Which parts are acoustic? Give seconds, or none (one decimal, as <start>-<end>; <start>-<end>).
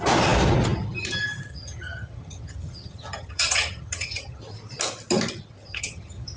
0.0-1.5; 4.4-5.7